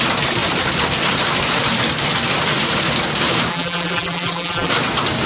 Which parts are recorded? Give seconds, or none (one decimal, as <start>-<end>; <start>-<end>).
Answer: 0.0-3.5; 4.7-5.3